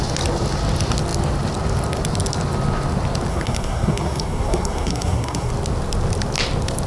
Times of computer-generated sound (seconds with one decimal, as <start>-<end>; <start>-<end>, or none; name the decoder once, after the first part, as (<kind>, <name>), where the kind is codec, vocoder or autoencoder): 3.3-5.5 (codec, SNAC)